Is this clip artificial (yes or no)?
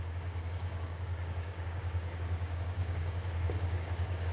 yes